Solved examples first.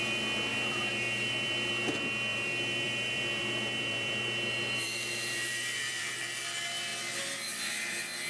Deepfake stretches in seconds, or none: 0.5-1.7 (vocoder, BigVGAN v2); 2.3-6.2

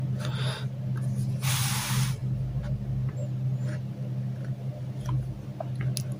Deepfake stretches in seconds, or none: none

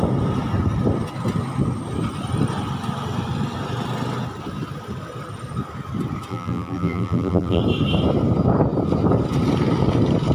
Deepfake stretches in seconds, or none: 6.3-7.6 (vocoder, BigVGAN v2)

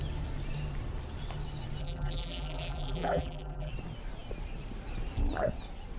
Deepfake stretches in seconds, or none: 1.8-3.7 (vocoder, BigVGAN v2)

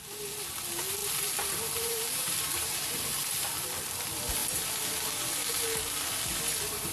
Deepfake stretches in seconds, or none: 1.0-2.9 (vocoder, BigVGAN v2)

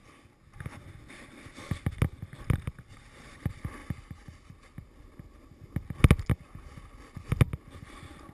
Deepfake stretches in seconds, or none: 2.4-3.8 (vocoder, BigVGAN v2); 7.7-8.3

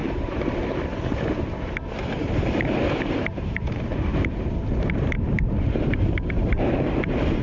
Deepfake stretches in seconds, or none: 0.0-3.6 (vocoder, BigVGAN v2); 4.1-7.4